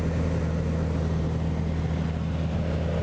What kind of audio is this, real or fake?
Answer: real